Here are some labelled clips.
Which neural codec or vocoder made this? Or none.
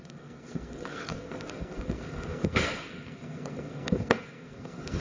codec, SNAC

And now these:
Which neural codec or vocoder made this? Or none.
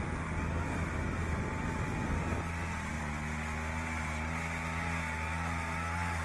none